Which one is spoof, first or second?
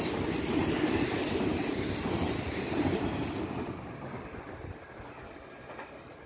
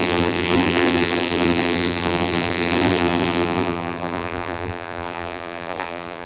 second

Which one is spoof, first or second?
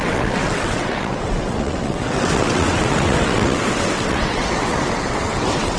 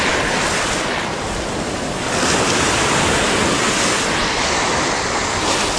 first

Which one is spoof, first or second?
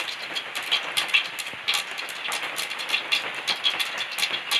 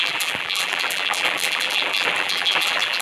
second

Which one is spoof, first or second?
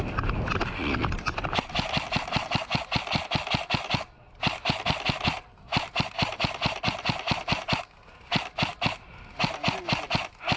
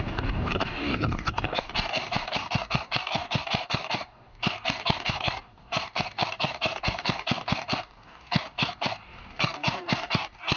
second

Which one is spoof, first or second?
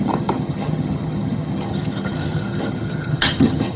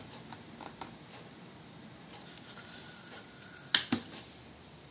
first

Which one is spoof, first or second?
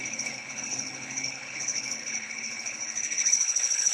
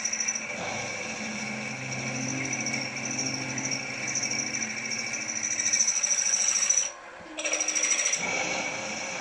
first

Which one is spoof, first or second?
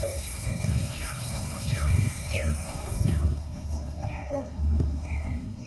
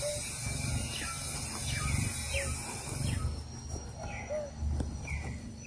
first